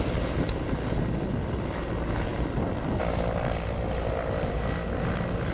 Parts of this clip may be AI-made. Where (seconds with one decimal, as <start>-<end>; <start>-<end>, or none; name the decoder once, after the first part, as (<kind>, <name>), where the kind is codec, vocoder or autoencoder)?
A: none